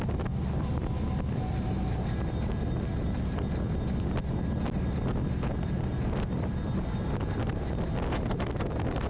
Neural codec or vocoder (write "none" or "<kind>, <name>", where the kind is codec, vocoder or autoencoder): none